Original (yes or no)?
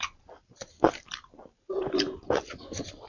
no